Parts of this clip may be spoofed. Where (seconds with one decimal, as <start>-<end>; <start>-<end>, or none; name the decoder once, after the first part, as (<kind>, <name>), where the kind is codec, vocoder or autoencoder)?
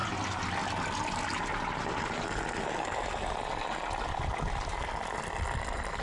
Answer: none